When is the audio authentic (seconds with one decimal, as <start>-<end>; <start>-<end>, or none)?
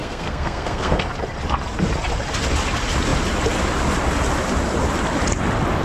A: 1.0-5.8